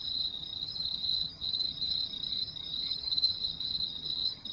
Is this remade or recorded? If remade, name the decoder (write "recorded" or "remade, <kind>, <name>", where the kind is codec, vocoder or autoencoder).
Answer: remade, vocoder, HiFi-GAN